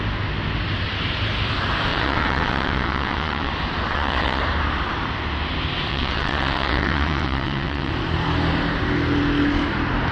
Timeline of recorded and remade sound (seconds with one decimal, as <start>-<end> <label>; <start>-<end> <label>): 0.0-1.9 recorded; 1.9-3.5 remade; 3.5-3.9 recorded; 3.9-4.4 remade; 4.4-5.9 recorded; 5.9-7.9 remade; 7.9-10.1 recorded